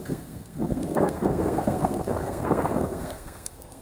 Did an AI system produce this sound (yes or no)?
yes